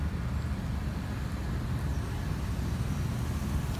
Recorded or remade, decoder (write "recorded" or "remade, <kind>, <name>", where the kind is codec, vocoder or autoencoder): recorded